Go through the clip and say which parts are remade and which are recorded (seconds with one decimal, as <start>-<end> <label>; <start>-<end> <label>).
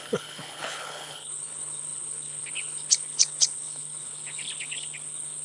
0.0-5.4 remade